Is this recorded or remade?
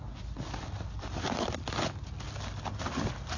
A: recorded